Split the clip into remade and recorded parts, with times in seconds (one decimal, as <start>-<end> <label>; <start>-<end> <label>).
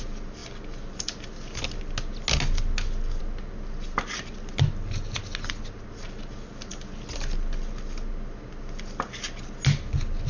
0.0-10.3 recorded